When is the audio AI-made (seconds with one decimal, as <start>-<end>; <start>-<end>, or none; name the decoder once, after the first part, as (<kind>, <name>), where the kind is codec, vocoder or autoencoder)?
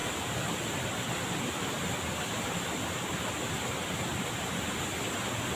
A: none